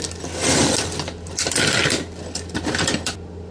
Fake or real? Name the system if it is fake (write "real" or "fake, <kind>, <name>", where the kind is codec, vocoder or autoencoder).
real